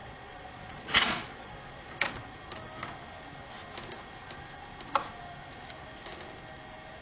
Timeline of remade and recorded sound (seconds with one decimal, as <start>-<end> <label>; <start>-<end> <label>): 0.0-2.1 remade; 2.1-7.0 recorded